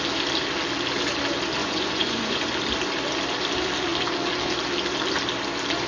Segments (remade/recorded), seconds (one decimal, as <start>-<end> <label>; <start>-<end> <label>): 0.0-1.6 recorded; 1.6-2.4 remade; 2.4-5.9 recorded